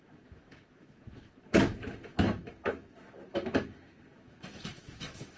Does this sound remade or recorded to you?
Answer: remade